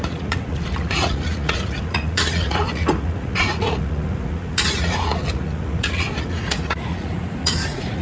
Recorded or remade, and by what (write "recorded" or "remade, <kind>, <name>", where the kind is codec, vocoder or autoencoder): remade, vocoder, Vocos